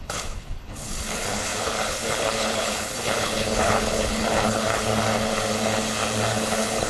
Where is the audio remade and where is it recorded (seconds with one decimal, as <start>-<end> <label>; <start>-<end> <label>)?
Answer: 0.0-4.9 remade; 4.9-6.3 recorded; 6.3-6.9 remade